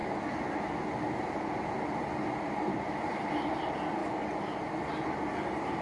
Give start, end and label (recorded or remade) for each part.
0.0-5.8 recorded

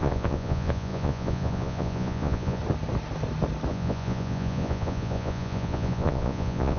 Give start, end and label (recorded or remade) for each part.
0.0-2.6 remade; 2.6-3.7 recorded; 3.7-6.8 remade